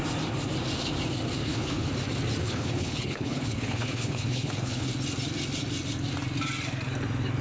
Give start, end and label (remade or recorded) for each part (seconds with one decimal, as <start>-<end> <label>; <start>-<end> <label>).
0.0-1.4 recorded; 1.4-1.9 remade; 1.9-2.4 recorded; 2.4-4.9 remade; 4.9-7.4 recorded